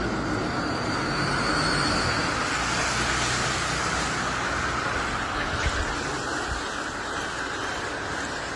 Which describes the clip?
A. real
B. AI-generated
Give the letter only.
A